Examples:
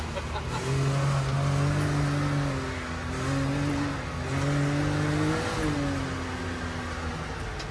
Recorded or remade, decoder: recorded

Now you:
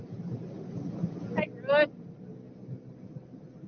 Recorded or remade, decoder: recorded